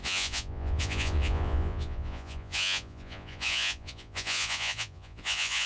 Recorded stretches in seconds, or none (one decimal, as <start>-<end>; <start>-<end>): none